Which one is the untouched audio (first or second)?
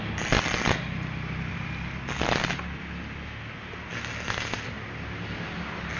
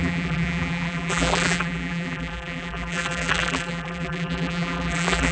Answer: first